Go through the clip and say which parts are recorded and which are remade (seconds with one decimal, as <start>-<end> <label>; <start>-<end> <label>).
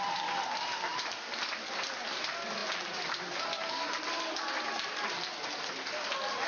0.0-6.5 recorded